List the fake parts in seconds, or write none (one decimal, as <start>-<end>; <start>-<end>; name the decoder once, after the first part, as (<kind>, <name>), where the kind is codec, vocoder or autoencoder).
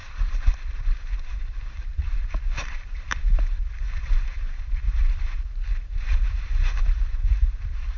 0.0-8.0 (vocoder, BigVGAN v2)